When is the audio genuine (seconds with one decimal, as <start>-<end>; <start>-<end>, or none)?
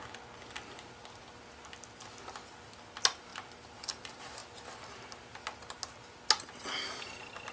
0.0-7.5